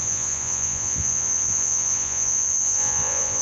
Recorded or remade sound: remade